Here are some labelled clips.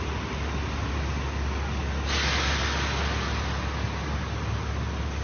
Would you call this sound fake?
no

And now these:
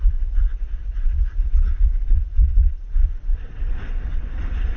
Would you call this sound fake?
yes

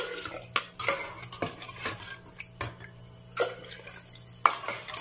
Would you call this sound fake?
no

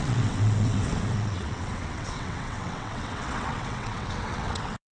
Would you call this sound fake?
yes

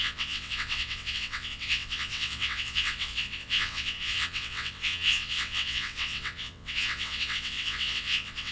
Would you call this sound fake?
yes